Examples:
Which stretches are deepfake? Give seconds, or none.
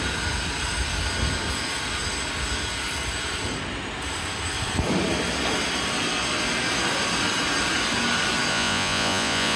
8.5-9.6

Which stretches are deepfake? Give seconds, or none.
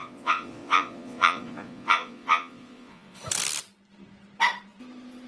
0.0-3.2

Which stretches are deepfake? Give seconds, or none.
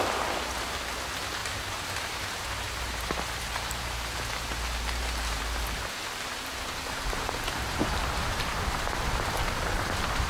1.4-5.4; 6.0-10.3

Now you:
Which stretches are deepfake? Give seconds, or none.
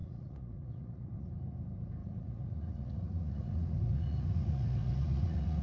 0.0-1.3; 2.0-5.6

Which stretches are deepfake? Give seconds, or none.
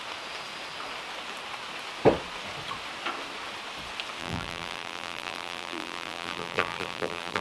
4.2-7.4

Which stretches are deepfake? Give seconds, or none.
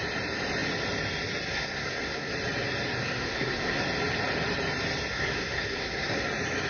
1.5-2.3; 3.0-3.8; 5.1-6.3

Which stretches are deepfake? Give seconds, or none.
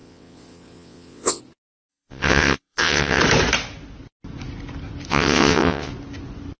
0.0-1.4; 1.9-3.2; 5.1-5.9